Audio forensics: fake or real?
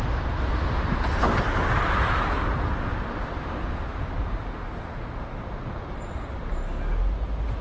real